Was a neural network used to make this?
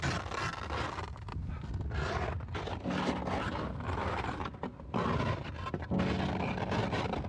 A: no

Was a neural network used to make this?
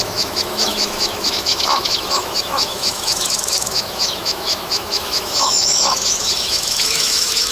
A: yes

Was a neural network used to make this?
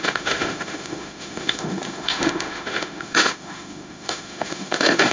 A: yes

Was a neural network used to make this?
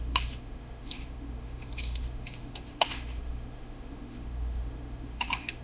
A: yes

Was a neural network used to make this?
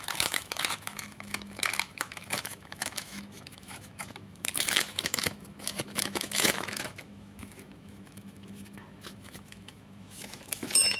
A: yes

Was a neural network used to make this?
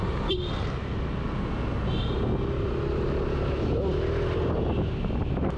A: no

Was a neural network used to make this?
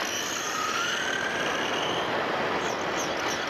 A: no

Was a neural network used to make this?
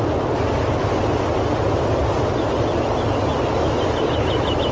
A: no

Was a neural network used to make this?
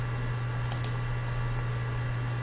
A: no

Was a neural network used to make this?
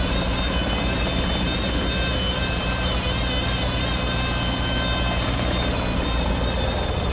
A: no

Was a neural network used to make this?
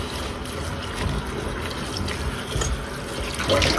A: no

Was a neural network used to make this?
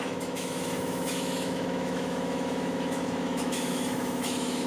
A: yes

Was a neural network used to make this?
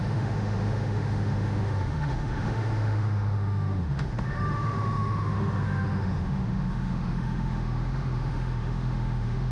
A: yes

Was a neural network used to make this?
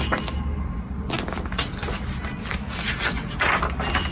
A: no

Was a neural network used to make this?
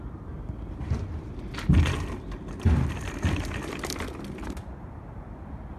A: no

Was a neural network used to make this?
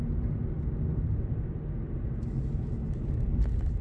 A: no